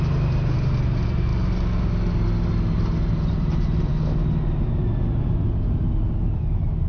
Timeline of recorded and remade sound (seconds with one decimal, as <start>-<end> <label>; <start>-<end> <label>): 0.0-1.3 remade; 1.3-3.1 recorded; 3.1-3.9 remade; 3.9-6.9 recorded